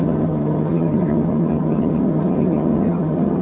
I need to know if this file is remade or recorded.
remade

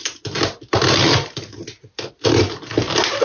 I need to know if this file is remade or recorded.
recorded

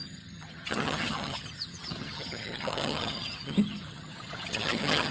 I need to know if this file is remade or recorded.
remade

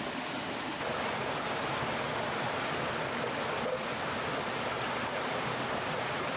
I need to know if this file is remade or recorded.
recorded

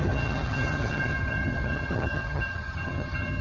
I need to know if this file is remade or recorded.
remade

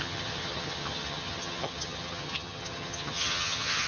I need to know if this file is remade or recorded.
remade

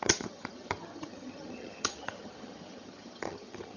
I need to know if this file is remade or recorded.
remade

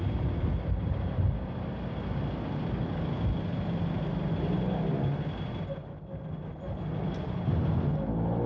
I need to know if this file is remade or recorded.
recorded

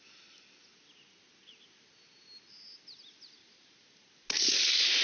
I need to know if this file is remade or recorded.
recorded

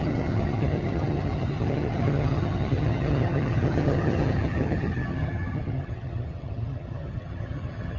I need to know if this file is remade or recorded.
remade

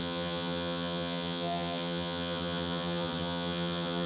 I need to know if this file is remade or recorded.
remade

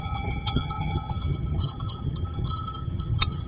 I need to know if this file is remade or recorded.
remade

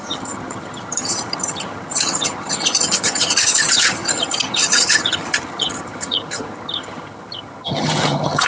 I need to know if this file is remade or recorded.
remade